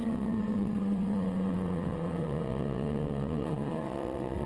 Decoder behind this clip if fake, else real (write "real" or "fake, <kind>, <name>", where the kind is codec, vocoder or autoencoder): fake, vocoder, WaveNeXt